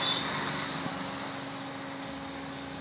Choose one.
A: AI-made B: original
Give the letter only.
B